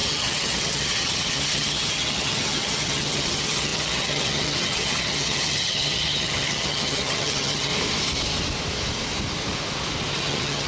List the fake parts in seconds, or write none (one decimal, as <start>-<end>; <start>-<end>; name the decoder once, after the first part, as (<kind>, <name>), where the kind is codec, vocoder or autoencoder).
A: 0.0-7.7 (vocoder, HiFi-GAN); 10.1-10.7